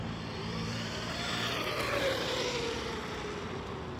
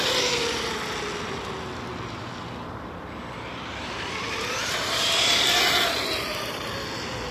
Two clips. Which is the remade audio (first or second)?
first